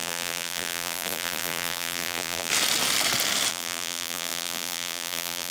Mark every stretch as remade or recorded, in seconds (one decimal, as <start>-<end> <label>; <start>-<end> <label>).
0.0-2.5 remade; 2.5-3.5 recorded; 3.5-5.5 remade